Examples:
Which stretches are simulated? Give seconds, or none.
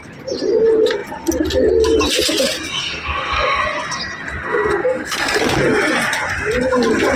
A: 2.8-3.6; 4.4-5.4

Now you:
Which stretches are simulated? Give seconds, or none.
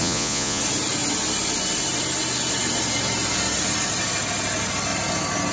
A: 0.0-0.6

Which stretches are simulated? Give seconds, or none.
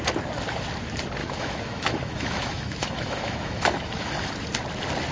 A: 1.2-4.3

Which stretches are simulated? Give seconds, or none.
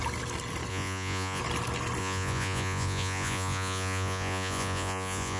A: 0.7-1.4; 2.0-5.4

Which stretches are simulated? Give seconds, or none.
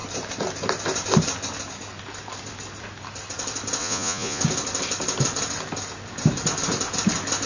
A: 3.8-4.4